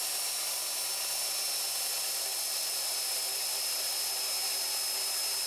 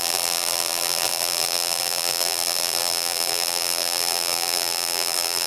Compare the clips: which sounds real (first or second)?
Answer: first